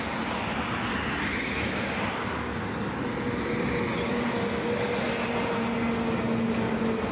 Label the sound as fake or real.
real